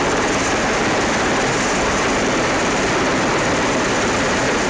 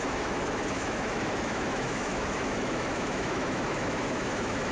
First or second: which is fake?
second